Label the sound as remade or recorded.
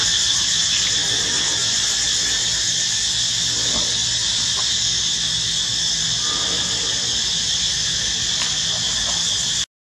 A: recorded